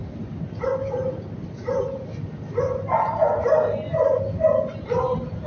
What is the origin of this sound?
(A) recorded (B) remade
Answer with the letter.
A